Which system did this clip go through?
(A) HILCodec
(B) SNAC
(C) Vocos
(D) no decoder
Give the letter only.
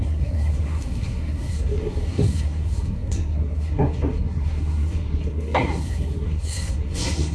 B